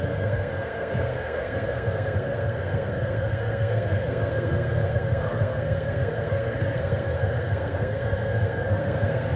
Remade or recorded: remade